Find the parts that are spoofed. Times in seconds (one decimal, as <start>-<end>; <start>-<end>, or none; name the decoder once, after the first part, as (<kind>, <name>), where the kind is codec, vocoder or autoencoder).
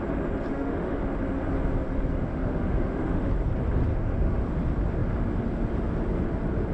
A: 0.5-1.0 (autoencoder, DAC-VAE); 2.3-3.3; 3.9-4.4